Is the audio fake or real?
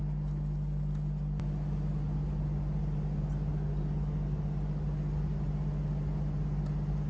real